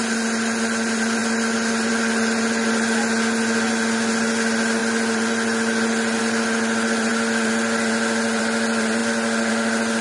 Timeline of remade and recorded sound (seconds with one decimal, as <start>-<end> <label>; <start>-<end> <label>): 0.0-10.0 recorded